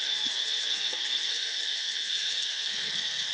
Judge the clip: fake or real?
fake